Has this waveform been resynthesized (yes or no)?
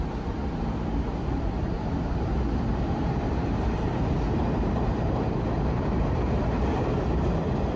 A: yes